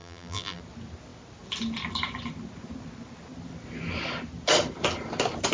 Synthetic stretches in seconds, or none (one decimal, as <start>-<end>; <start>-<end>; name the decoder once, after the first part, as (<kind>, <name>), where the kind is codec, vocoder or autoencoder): 0.0-0.6 (vocoder, BigVGAN v2)